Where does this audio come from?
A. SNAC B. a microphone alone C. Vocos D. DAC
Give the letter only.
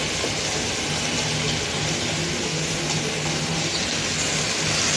B